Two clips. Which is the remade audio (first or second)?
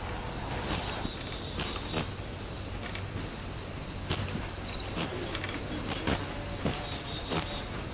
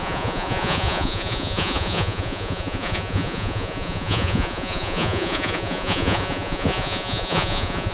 second